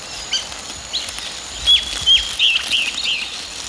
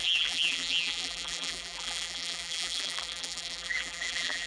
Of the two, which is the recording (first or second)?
first